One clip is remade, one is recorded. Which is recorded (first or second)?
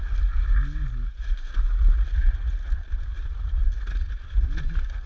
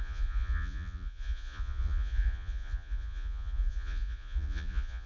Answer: first